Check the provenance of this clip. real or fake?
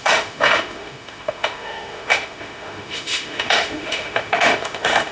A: fake